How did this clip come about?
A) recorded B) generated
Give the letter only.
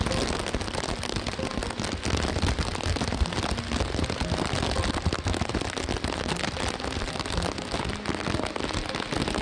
A